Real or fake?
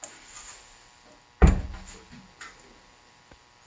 real